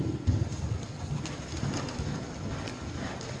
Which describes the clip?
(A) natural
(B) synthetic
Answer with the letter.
A